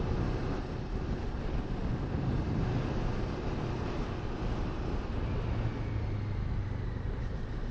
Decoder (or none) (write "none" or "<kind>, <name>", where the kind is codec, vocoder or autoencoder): none